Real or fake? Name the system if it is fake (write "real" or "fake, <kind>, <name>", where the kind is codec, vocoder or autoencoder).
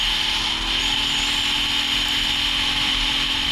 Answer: real